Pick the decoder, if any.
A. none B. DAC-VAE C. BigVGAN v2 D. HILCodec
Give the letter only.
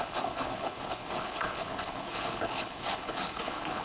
D